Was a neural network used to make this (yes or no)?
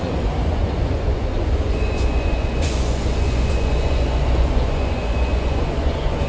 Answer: yes